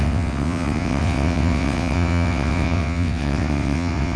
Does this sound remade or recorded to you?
remade